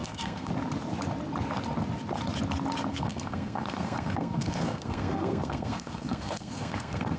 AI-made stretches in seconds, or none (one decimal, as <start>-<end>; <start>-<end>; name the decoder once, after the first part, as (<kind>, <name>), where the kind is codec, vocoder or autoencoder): 0.0-0.5 (codec, SNAC); 2.9-7.2